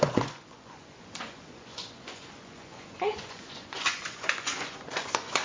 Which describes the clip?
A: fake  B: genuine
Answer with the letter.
A